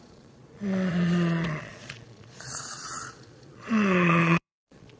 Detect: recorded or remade remade